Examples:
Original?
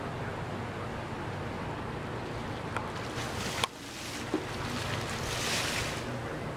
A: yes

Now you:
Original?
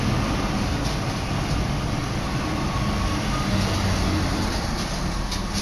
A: yes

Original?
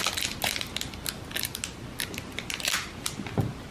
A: yes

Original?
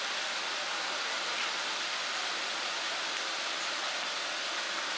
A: yes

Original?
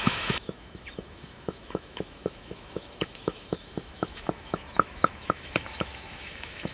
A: no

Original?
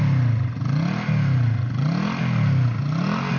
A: yes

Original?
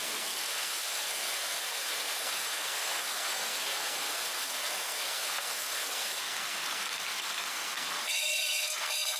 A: no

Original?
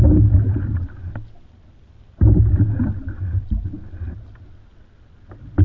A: yes